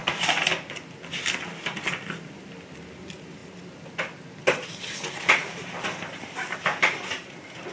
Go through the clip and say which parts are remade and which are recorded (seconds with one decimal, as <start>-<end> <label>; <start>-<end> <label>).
0.0-7.7 recorded